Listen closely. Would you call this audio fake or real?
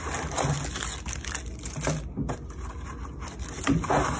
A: real